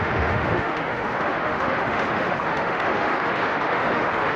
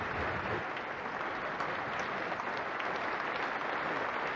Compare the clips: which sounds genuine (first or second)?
second